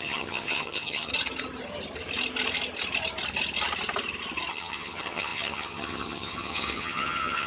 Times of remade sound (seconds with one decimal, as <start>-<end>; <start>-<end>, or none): 0.0-1.1; 4.5-7.5